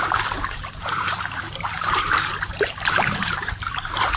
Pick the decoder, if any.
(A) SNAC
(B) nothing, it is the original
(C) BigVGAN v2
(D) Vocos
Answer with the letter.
C